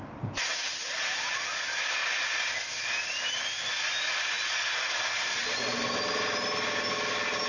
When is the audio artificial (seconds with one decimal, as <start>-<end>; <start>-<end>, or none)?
5.4-6.2